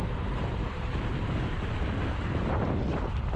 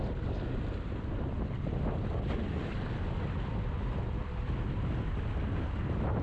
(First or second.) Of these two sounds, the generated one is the first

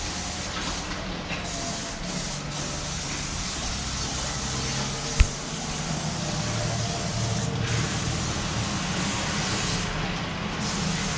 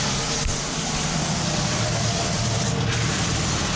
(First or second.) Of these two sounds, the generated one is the second